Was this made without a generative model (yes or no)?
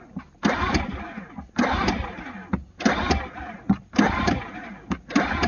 yes